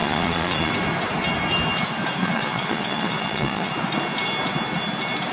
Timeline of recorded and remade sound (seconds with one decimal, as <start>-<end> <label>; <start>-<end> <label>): 0.0-0.7 remade; 0.7-2.2 recorded; 2.2-3.7 remade; 3.7-5.3 recorded